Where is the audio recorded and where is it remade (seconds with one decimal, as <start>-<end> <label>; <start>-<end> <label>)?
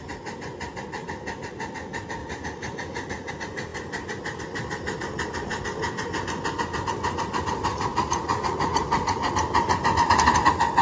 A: 0.0-2.2 recorded; 2.2-3.3 remade; 3.3-7.7 recorded; 7.7-9.3 remade; 9.3-10.8 recorded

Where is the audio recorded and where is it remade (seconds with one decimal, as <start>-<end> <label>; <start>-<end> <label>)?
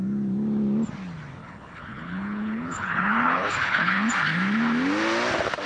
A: 0.0-1.4 recorded; 1.4-4.1 remade; 4.1-5.7 recorded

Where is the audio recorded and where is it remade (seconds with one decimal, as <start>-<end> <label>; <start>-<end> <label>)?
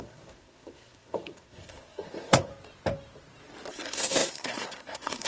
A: 0.0-2.5 remade; 2.5-3.7 recorded; 3.7-5.3 remade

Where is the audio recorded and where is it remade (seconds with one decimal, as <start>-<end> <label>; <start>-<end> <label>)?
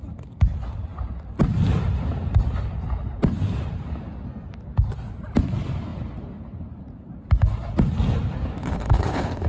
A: 0.0-8.6 recorded; 8.6-9.5 remade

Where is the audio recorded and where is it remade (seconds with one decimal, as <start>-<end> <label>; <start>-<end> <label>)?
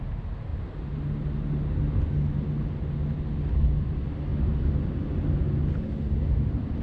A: 0.0-6.8 recorded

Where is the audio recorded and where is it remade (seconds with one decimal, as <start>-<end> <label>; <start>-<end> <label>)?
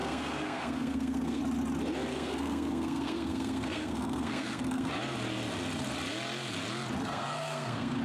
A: 0.0-1.4 remade; 1.4-2.1 recorded; 2.1-4.9 remade; 4.9-7.0 recorded; 7.0-8.0 remade